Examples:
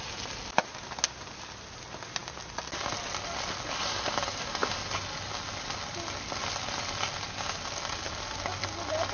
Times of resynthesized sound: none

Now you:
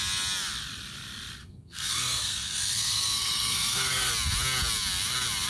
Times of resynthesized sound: 1.4-4.1 (codec, SNAC)

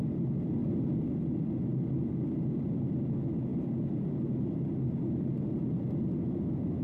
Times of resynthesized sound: none

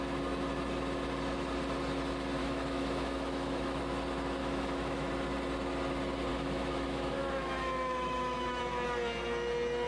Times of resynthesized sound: 2.4-3.8 (autoencoder, DAC-VAE); 4.4-5.1; 6.3-8.6

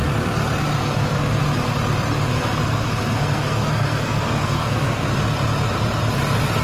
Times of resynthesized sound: 0.8-1.4 (codec, SNAC); 2.3-5.1